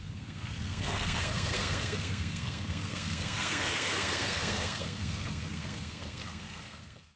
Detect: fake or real fake